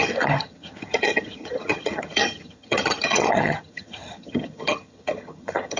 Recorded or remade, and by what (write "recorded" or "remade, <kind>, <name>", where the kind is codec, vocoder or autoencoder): remade, vocoder, HiFi-GAN